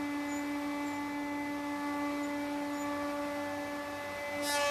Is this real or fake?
real